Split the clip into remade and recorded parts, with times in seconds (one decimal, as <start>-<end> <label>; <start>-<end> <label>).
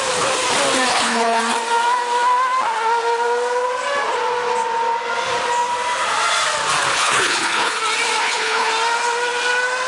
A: 0.0-0.9 recorded; 0.9-1.4 remade; 1.4-6.9 recorded; 6.9-7.8 remade; 7.8-8.2 recorded; 8.2-8.7 remade; 8.7-9.9 recorded